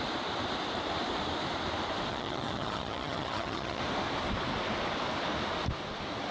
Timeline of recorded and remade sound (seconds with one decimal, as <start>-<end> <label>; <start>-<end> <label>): 0.0-2.1 recorded; 2.1-3.8 remade; 3.8-6.3 recorded